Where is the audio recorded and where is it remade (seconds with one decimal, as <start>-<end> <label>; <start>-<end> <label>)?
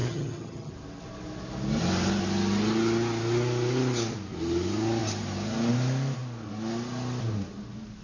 0.0-0.7 remade; 0.7-8.0 recorded